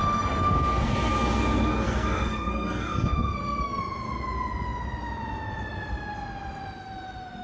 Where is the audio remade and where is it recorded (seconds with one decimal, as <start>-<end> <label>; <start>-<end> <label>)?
0.0-3.8 remade; 3.8-7.4 recorded